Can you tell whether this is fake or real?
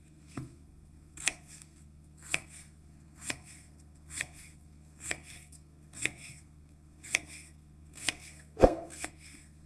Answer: fake